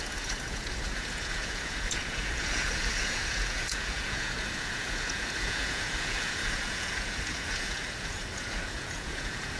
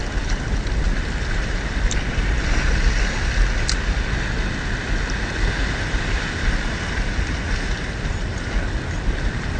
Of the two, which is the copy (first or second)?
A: first